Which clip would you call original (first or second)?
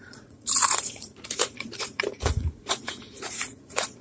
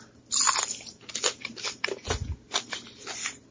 second